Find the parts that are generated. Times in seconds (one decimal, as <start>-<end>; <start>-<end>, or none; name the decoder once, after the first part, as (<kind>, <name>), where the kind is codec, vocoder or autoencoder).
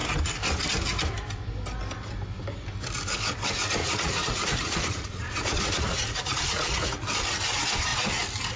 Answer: 3.8-7.0 (vocoder, Vocos)